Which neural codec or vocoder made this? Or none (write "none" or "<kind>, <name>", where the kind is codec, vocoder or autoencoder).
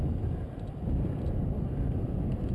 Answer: none